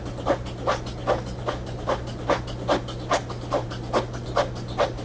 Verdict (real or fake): real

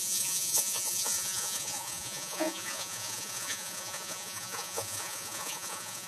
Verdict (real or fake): fake